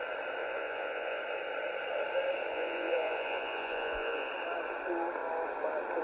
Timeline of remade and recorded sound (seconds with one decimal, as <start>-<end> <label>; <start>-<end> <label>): 0.0-0.4 recorded; 0.4-1.2 remade; 1.2-2.5 recorded; 2.5-4.3 remade; 4.3-6.0 recorded